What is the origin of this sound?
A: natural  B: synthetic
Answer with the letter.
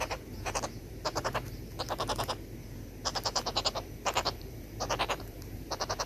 B